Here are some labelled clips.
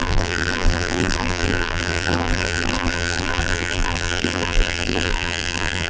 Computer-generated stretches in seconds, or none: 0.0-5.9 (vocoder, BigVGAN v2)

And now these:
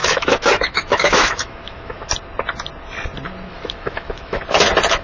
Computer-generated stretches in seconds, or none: 0.0-2.1 (autoencoder, DAC-VAE); 3.5-4.4

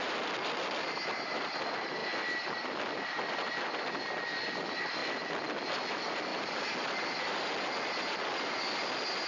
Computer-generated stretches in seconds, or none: none

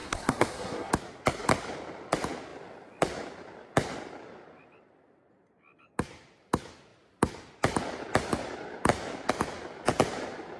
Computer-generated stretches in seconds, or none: 0.0-0.9 (codec, SNAC)

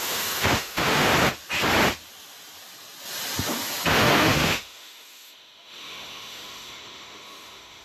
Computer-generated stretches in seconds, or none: 0.0-1.1 (autoencoder, DAC-VAE); 3.9-7.8

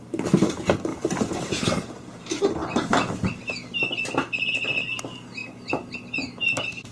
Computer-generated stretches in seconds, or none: 0.9-2.4 (vocoder, BigVGAN v2)